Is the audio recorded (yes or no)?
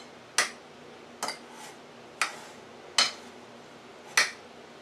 yes